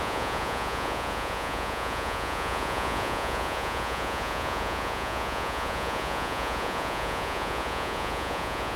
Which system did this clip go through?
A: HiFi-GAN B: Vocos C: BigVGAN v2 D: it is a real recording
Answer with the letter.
B